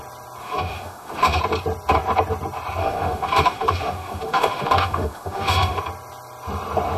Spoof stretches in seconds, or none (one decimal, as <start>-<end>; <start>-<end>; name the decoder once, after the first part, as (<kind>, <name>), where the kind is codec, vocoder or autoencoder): 0.4-1.4 (autoencoder, DAC-VAE); 2.8-5.8